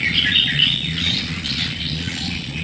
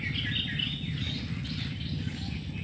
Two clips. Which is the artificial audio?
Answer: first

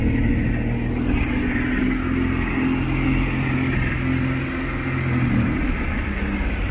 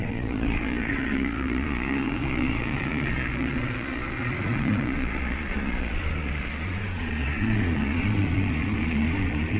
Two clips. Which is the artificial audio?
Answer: second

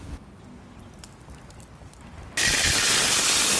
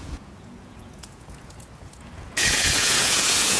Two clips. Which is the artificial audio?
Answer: second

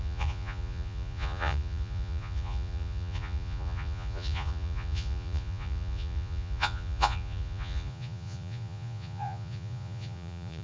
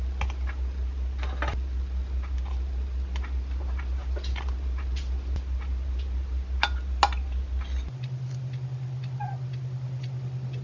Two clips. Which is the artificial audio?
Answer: first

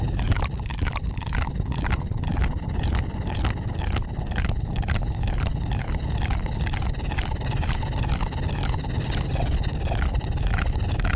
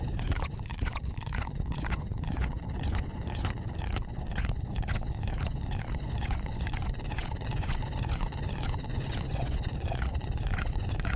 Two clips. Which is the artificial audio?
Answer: second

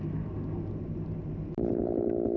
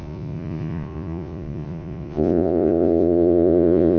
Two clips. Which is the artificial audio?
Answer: second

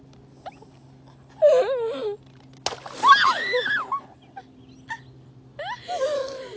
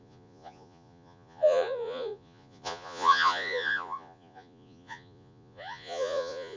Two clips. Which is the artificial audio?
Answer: second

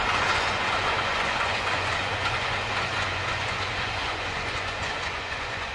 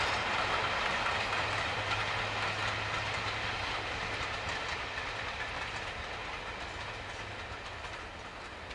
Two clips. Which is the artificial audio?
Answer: first